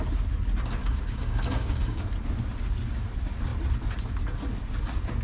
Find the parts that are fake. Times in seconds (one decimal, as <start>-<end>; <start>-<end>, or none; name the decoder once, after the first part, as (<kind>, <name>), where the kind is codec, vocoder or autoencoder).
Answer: 0.8-2.0 (codec, DAC)